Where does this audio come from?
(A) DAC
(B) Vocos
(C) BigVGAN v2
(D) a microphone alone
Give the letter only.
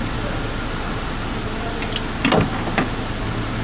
D